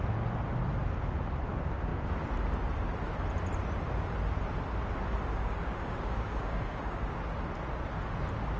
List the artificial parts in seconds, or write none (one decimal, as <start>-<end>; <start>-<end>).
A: 5.3-7.2